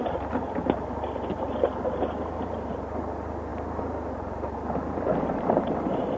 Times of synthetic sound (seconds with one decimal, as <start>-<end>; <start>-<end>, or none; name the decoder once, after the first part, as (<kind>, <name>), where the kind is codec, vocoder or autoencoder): none